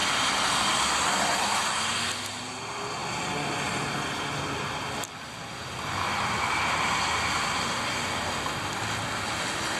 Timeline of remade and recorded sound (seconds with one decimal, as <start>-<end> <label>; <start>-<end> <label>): 0.0-9.8 recorded